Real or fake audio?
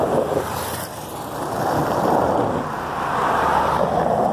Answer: real